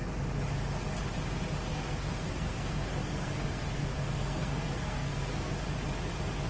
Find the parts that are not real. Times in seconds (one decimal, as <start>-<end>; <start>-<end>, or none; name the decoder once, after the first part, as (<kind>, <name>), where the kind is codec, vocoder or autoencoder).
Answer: 1.7-5.6 (codec, SNAC)